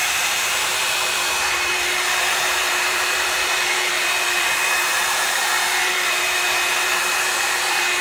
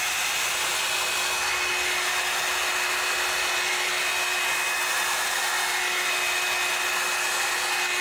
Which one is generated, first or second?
first